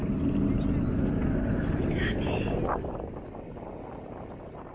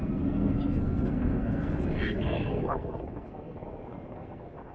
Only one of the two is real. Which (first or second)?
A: first